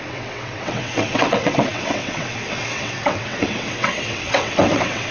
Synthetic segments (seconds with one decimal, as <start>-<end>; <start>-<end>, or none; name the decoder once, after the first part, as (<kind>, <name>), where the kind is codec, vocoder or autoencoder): 0.0-5.1 (vocoder, WaveNeXt)